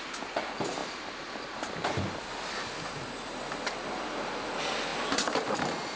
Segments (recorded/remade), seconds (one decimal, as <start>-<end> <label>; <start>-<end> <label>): 0.0-6.0 recorded